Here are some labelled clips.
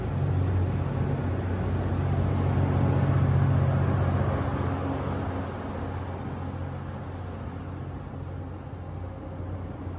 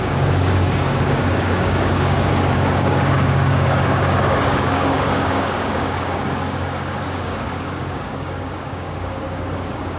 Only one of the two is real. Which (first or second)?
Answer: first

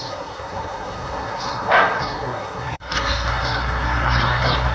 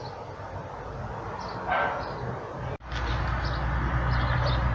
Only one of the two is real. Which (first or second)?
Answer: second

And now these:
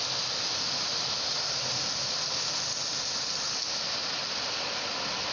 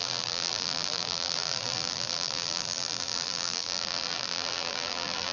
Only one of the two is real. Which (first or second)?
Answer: first